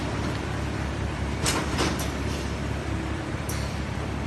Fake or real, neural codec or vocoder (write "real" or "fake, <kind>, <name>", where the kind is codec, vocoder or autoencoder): fake, vocoder, BigVGAN v2